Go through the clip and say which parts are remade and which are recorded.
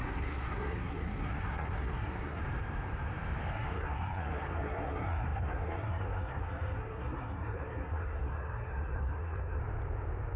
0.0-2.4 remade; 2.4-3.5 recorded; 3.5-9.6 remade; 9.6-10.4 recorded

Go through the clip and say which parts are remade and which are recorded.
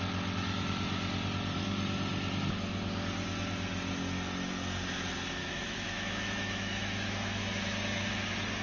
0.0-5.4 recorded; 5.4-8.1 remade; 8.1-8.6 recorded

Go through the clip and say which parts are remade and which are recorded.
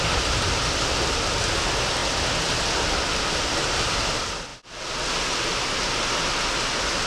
0.0-7.1 recorded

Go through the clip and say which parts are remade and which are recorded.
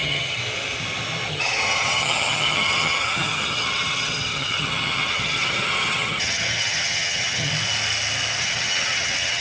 0.0-0.4 remade; 0.4-1.3 recorded; 1.3-7.5 remade; 7.5-8.4 recorded; 8.4-9.4 remade